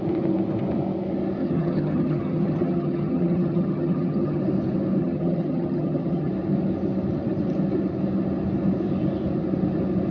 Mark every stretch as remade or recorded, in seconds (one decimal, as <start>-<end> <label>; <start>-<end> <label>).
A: 0.0-1.4 recorded; 1.4-4.4 remade; 4.4-5.0 recorded; 5.0-6.3 remade; 6.3-10.1 recorded